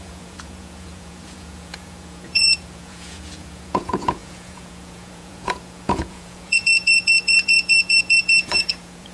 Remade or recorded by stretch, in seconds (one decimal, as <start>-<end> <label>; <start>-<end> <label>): 0.0-9.1 remade